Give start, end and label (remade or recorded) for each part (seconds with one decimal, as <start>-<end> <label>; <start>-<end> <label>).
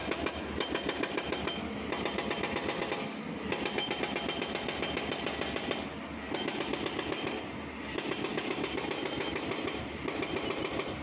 0.0-8.3 recorded; 8.3-8.8 remade; 8.8-11.0 recorded